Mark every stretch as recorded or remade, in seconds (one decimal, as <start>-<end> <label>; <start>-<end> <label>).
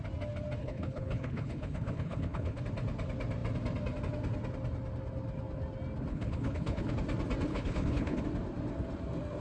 0.0-0.6 recorded; 0.6-2.6 remade; 2.6-6.1 recorded; 6.1-6.9 remade; 6.9-7.5 recorded; 7.5-8.2 remade; 8.2-9.4 recorded